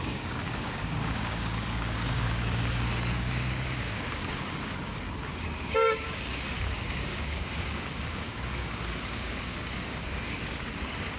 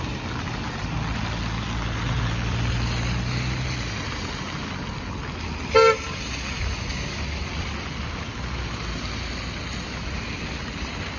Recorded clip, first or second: second